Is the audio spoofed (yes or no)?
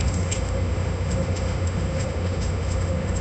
yes